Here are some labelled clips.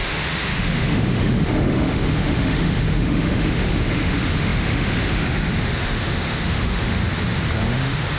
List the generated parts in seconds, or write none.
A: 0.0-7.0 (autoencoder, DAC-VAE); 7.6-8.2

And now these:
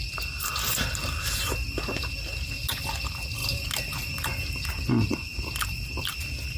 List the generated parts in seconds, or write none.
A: none

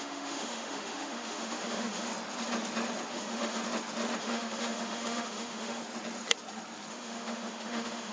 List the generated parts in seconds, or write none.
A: 0.0-2.1 (autoencoder, DAC-VAE); 3.1-3.6; 4.2-5.8; 6.9-8.1

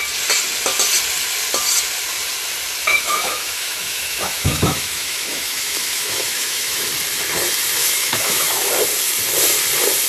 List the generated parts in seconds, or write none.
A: 2.8-6.9 (autoencoder, DAC-VAE); 7.8-8.7

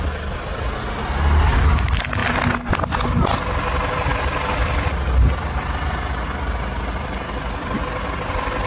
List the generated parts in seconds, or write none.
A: none

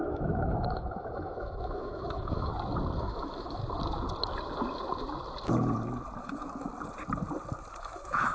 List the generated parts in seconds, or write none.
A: 0.0-2.5 (autoencoder, DAC-VAE); 3.0-3.6; 6.2-6.7; 7.8-8.3